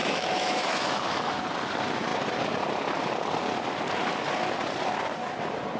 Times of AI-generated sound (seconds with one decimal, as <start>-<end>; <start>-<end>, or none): 0.0-1.4